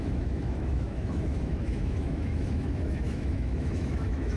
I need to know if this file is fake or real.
fake